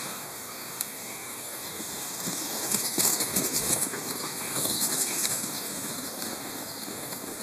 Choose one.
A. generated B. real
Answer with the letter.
A